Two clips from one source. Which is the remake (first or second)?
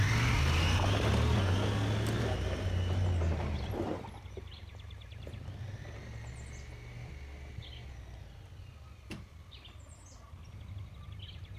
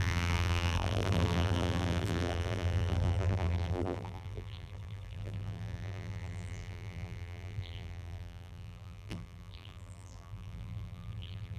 second